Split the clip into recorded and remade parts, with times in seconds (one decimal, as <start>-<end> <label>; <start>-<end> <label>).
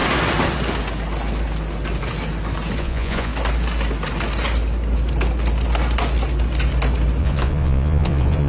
0.0-2.8 recorded; 2.8-3.3 remade; 3.3-7.2 recorded; 7.2-8.5 remade